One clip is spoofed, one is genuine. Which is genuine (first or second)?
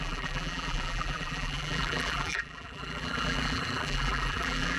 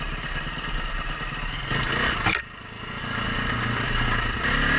second